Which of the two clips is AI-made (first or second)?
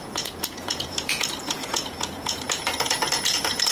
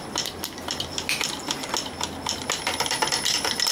first